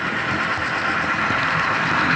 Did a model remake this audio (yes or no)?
no